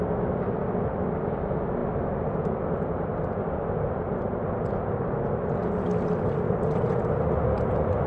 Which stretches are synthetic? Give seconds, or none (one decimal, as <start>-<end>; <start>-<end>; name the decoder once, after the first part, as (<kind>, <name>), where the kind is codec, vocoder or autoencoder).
none